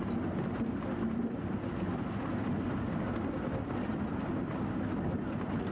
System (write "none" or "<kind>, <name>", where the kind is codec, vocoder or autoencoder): none